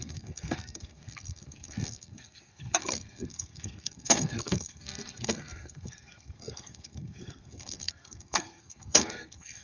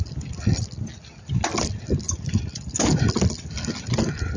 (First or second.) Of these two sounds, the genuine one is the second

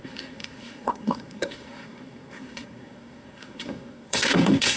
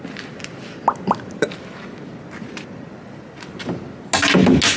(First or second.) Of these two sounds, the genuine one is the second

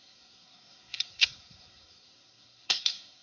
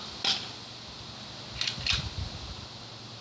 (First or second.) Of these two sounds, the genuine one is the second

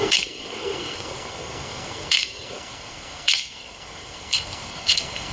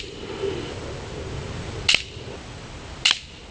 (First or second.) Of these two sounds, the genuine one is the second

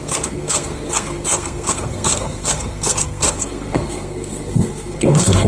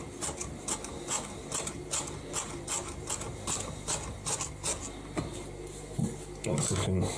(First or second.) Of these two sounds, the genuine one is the second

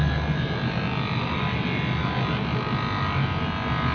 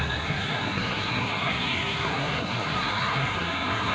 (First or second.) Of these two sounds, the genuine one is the first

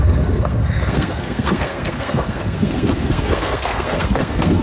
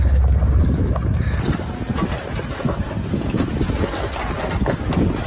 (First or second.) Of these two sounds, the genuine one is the second